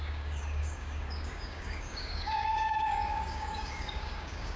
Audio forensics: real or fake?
fake